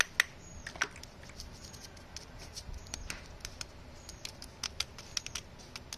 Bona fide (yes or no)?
yes